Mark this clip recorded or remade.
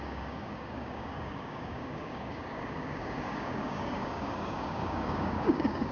remade